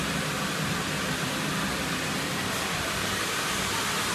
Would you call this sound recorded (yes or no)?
no